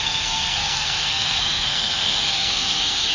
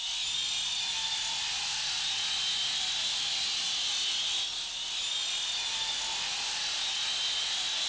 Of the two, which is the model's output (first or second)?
first